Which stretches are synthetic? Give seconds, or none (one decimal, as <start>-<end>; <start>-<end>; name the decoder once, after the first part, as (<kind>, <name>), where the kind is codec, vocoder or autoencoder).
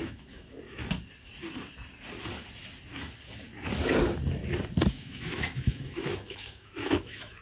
0.0-0.8 (autoencoder, DAC-VAE); 4.9-7.4